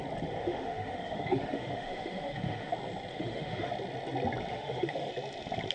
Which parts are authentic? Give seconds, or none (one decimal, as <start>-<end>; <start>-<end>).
0.0-0.4; 2.7-3.1; 3.7-4.5; 5.1-5.7